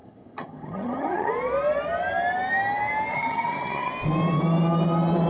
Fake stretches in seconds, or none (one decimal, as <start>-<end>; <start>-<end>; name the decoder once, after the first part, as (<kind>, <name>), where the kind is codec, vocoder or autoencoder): 0.0-1.3 (vocoder, HiFi-GAN); 3.1-3.9